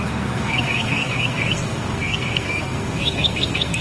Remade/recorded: remade